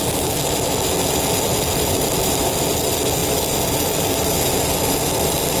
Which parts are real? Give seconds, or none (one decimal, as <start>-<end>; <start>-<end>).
0.0-5.6